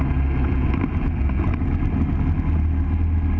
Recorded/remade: recorded